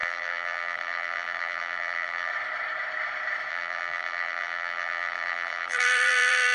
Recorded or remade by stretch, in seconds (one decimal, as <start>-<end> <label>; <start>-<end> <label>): 0.0-2.3 remade; 2.3-3.5 recorded; 3.5-6.5 remade